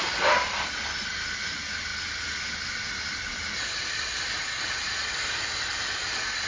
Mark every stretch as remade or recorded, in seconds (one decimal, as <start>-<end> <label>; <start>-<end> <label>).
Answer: 0.0-6.5 recorded